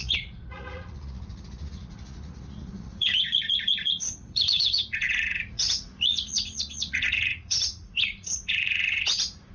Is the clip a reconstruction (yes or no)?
yes